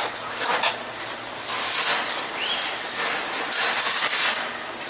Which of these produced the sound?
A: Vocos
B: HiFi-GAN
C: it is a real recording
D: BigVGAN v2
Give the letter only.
C